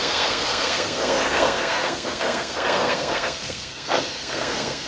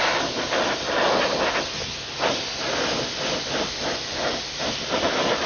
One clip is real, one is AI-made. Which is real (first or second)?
second